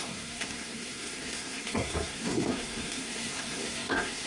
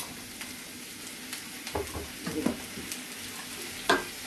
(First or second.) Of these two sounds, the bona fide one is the second